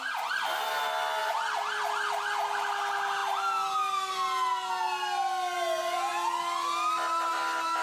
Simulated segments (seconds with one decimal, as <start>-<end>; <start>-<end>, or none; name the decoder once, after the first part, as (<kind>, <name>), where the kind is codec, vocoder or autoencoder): 1.2-2.2 (vocoder, BigVGAN v2)